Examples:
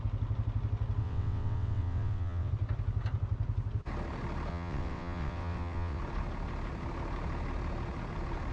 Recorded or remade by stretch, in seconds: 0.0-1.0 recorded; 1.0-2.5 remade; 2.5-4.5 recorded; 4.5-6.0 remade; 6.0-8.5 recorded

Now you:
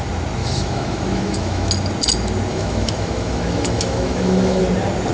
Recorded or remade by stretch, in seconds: 0.0-0.4 recorded; 0.4-1.7 remade; 1.7-2.5 recorded; 2.5-4.6 remade; 4.6-5.1 recorded

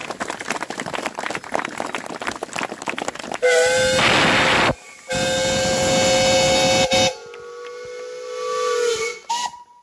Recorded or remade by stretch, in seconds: 0.0-9.8 recorded

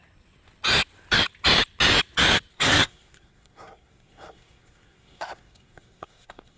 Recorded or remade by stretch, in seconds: 0.0-2.5 recorded; 2.5-6.6 remade

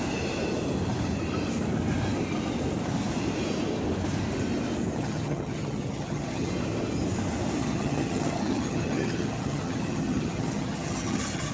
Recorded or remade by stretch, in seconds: 0.0-4.9 recorded; 4.9-6.5 remade; 6.5-7.6 recorded; 7.6-11.5 remade